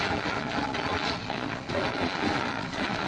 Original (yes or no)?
no